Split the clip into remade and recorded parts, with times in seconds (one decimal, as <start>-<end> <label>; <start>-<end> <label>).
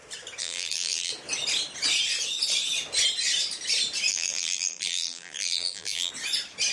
0.0-0.4 recorded; 0.4-1.1 remade; 1.1-4.1 recorded; 4.1-6.1 remade; 6.1-6.7 recorded